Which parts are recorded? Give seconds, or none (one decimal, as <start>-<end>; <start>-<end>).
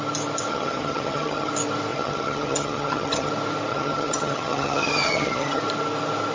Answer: 0.0-0.5; 1.5-1.9; 3.3-3.7; 5.6-6.3